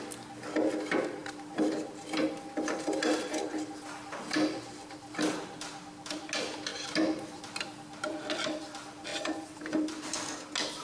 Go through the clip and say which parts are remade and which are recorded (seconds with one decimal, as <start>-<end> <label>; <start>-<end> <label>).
0.0-1.2 recorded; 1.2-5.7 remade; 5.7-9.1 recorded; 9.1-10.1 remade; 10.1-10.8 recorded